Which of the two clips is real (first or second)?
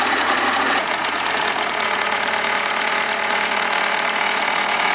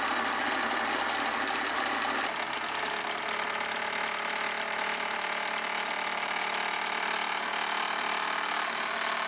second